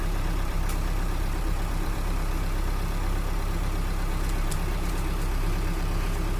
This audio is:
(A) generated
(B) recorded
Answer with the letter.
A